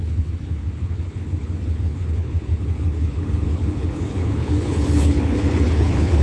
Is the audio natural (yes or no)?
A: no